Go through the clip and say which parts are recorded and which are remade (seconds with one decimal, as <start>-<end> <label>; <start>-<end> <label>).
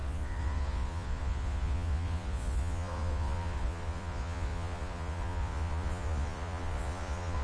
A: 0.0-7.4 remade